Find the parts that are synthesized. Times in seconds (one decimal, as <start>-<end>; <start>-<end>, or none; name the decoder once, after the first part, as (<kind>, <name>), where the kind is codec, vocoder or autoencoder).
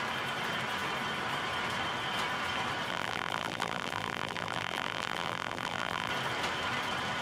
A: 2.9-6.1 (vocoder, BigVGAN v2)